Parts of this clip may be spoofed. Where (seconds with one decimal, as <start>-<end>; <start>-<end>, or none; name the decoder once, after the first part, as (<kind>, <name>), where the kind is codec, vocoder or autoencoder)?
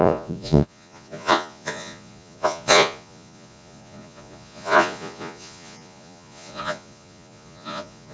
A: 0.0-8.1 (vocoder, Vocos)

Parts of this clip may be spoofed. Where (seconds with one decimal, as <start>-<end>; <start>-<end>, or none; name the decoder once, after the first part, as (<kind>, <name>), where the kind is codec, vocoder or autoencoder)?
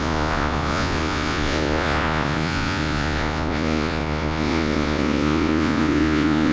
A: 0.0-6.5 (vocoder, Vocos)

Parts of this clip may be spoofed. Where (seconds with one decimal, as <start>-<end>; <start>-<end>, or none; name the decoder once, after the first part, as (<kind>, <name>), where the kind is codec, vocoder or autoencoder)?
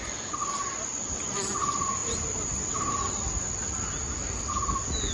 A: 0.0-0.4 (vocoder, Vocos); 1.3-2.0